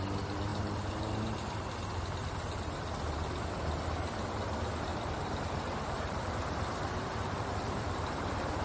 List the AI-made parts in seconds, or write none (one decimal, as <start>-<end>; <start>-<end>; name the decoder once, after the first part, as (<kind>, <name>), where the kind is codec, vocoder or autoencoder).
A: 0.5-1.7 (vocoder, BigVGAN v2); 4.9-8.1

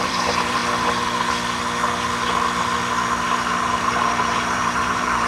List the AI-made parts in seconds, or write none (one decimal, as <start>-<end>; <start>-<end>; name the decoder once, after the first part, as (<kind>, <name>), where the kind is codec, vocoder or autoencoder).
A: 0.0-0.6 (vocoder, BigVGAN v2); 3.8-5.3

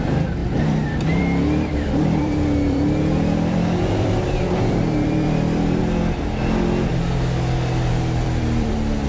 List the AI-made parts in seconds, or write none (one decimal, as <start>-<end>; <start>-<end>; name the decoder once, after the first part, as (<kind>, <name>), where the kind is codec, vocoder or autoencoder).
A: 0.0-5.8 (vocoder, BigVGAN v2); 7.9-9.1

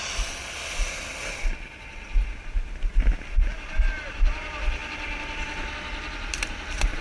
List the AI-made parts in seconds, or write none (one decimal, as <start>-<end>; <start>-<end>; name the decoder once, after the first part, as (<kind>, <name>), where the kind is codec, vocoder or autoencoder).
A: 6.3-7.0 (vocoder, BigVGAN v2)

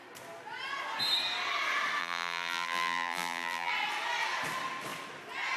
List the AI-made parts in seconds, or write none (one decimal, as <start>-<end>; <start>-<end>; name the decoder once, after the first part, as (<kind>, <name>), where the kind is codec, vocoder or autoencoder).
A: 2.0-3.7 (vocoder, BigVGAN v2)